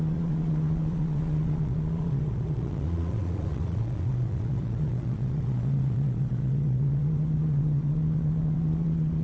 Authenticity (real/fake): fake